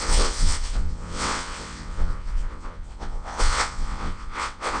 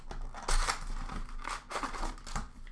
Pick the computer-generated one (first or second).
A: first